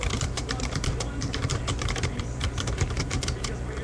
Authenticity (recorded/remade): remade